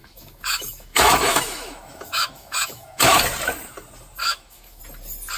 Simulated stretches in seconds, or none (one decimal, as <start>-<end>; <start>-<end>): 0.0-3.2; 4.2-4.8